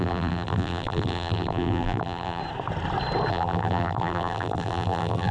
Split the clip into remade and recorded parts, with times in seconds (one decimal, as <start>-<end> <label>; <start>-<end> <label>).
0.0-2.4 remade; 2.4-3.3 recorded; 3.3-5.3 remade